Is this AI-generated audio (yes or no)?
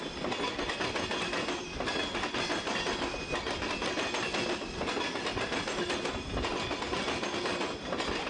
no